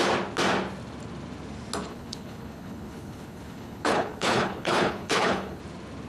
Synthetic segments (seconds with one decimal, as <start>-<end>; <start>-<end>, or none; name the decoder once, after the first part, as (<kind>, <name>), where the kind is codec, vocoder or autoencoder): 1.9-5.6 (codec, HILCodec)

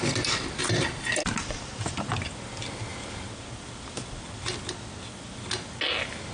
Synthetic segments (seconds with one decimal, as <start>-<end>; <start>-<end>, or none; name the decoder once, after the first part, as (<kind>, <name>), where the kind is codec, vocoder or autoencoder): 0.6-1.9 (vocoder, BigVGAN v2)

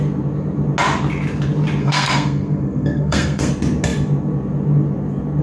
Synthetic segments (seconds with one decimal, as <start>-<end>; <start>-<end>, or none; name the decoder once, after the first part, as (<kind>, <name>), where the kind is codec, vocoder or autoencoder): 1.8-3.5 (codec, SNAC)

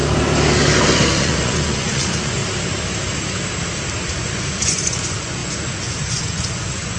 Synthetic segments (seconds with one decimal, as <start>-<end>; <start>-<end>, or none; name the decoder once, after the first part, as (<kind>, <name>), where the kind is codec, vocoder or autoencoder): 1.2-2.4 (vocoder, Vocos); 4.2-7.0

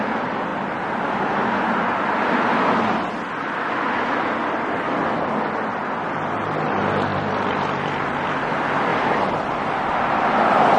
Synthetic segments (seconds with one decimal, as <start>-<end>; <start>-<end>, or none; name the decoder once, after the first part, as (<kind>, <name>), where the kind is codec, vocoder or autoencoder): 7.1-8.3 (vocoder, BigVGAN v2); 8.9-10.1

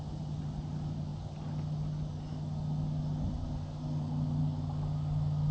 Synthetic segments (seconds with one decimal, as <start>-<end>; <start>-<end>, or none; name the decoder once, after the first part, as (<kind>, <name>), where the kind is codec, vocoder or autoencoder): none

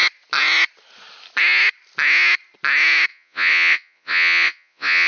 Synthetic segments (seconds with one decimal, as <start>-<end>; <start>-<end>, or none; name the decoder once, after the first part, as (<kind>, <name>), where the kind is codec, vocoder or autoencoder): 3.1-5.1 (vocoder, Vocos)

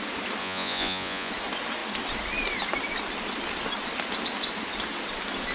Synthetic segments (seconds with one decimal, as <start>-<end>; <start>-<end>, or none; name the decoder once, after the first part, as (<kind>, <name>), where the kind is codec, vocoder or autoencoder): 0.4-1.3 (vocoder, Vocos)